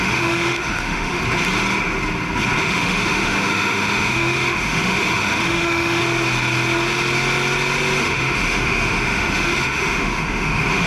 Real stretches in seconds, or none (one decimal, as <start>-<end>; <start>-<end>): 1.2-2.6; 6.0-8.0

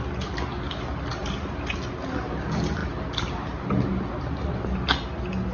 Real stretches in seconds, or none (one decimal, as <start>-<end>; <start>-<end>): 0.0-5.5

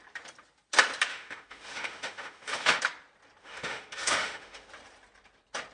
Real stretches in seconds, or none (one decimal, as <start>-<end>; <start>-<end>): 0.0-1.1; 2.8-3.4; 4.7-5.7

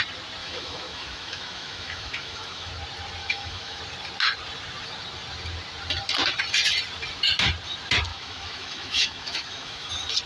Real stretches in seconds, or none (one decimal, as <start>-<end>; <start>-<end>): 0.0-0.4; 2.7-3.2; 3.8-8.1; 9.9-10.3

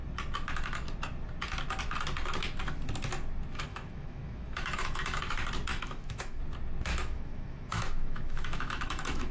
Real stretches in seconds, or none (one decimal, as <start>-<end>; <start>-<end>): 0.0-3.7; 5.2-5.7; 6.4-6.9

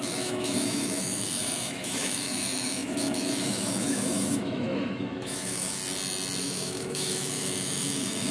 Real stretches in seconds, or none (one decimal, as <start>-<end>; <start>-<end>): 5.8-6.4

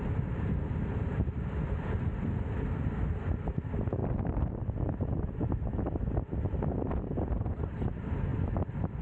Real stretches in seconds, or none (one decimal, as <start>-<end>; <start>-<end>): 0.0-9.0